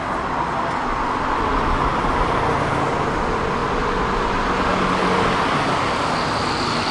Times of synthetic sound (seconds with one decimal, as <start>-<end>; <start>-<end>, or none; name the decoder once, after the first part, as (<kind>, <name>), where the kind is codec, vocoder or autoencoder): none